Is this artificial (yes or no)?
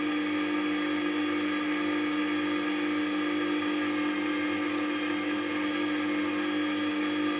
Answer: no